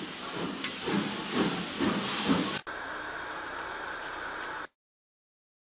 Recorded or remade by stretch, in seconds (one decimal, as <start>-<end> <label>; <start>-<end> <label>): 0.0-5.6 recorded